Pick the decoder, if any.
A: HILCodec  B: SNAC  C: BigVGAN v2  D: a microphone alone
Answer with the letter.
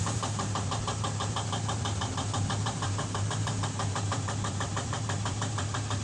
C